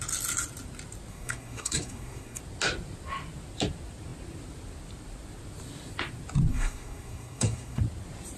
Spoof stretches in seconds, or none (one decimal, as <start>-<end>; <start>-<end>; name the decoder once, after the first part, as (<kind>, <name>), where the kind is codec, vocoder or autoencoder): 1.1-2.4 (codec, SNAC); 6.5-7.8